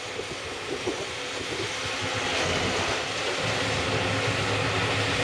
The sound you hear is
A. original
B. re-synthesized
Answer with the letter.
A